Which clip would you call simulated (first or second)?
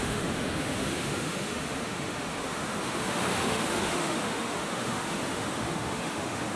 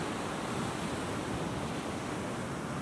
first